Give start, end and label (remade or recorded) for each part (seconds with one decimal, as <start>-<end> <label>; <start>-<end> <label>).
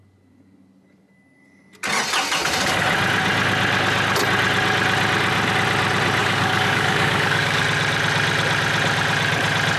0.0-6.2 recorded; 6.2-7.6 remade; 7.6-9.8 recorded